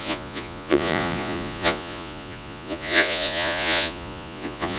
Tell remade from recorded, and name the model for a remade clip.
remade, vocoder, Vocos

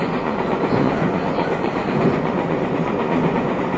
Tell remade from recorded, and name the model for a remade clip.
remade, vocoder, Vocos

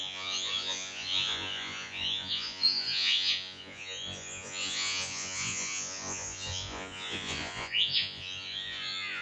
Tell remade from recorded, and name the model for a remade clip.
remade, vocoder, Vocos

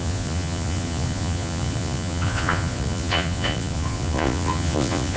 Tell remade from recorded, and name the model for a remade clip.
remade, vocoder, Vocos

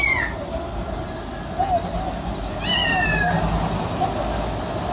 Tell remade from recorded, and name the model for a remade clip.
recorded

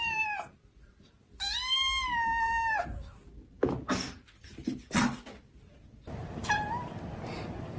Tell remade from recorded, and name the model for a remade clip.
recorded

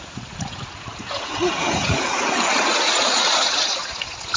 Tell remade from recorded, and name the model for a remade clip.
remade, vocoder, Vocos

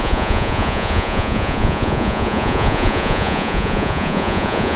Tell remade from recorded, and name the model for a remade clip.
remade, vocoder, Vocos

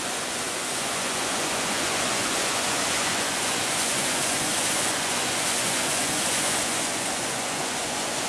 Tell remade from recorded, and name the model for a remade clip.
remade, vocoder, Vocos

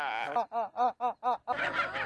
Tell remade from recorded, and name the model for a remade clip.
recorded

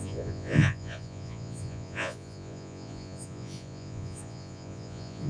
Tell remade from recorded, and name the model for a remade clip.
remade, vocoder, Vocos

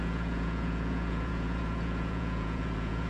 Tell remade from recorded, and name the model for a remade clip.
remade, vocoder, Vocos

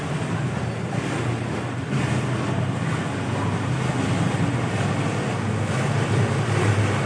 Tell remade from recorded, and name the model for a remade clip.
recorded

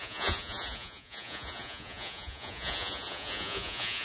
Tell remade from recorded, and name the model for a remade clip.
remade, vocoder, Vocos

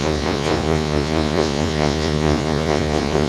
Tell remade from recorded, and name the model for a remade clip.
remade, vocoder, Vocos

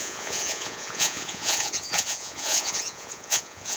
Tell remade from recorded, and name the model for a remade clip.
remade, vocoder, Vocos